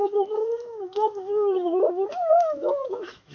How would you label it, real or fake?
fake